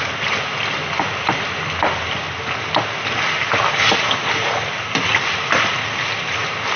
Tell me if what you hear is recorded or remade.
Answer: recorded